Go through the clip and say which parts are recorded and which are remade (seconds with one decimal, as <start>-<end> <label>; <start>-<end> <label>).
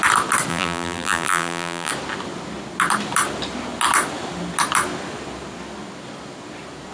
0.0-0.5 recorded; 0.5-1.9 remade; 1.9-6.9 recorded